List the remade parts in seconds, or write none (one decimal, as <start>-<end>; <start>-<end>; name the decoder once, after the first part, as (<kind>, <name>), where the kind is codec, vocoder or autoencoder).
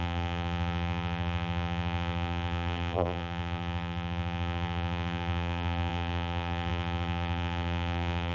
0.0-8.3 (vocoder, BigVGAN v2)